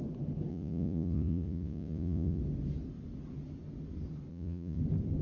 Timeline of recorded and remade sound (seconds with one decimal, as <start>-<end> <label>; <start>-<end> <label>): 0.0-0.5 recorded; 0.5-2.4 remade; 2.4-4.3 recorded; 4.3-4.8 remade; 4.8-5.2 recorded